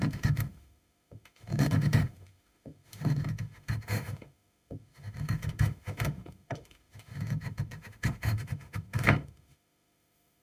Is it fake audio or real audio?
fake